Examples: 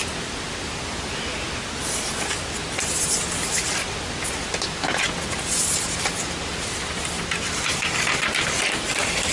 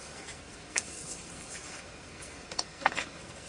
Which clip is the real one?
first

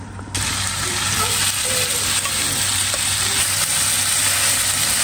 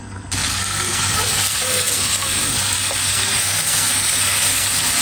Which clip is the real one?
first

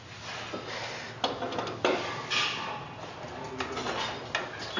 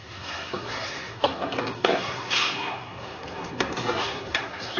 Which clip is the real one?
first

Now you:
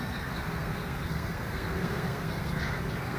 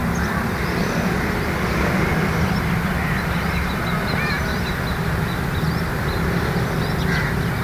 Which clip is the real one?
second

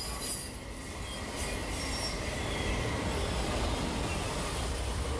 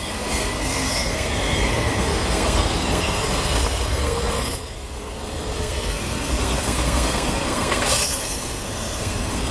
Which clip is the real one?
first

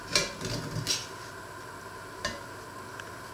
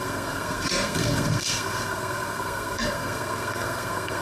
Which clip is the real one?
first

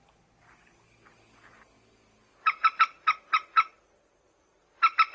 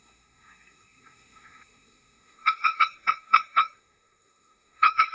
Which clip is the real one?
first